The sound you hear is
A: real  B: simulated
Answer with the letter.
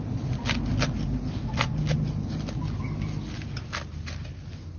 A